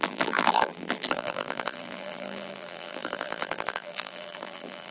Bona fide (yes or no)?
no